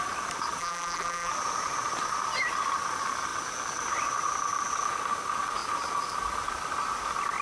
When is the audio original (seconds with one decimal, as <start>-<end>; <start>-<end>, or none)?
0.0-0.6; 1.3-7.4